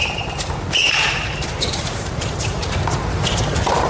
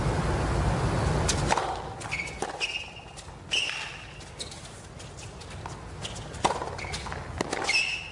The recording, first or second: second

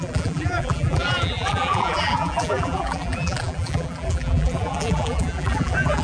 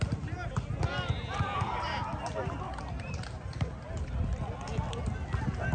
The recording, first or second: second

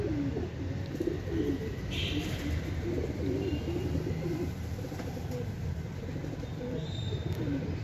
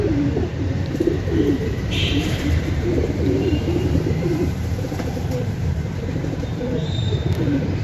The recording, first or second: first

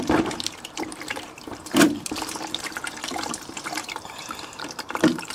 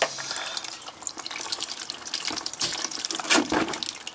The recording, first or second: second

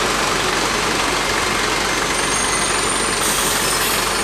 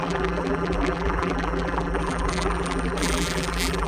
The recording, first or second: first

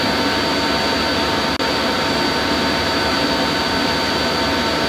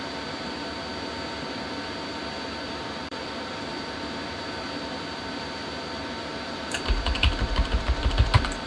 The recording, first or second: first